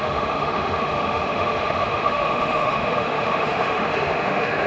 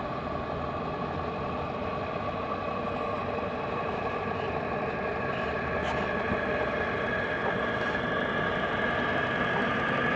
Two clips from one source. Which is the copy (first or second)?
first